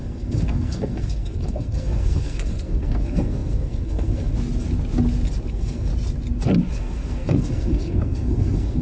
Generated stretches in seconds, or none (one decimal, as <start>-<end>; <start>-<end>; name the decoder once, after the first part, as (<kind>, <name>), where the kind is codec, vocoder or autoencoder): 0.0-4.3 (codec, SNAC); 5.5-5.9; 6.7-8.8